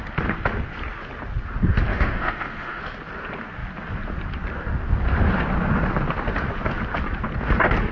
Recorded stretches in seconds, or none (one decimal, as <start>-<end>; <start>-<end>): 0.0-1.9; 2.8-7.9